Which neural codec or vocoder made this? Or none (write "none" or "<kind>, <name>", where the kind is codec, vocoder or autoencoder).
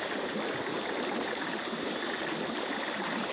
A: none